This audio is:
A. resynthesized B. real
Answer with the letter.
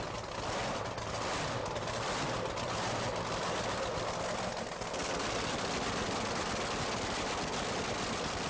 B